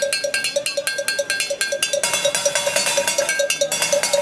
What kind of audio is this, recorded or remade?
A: recorded